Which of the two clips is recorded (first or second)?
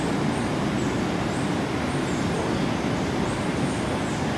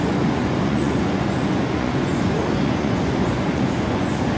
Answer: first